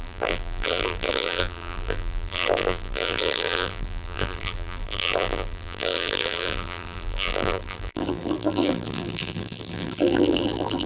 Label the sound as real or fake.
fake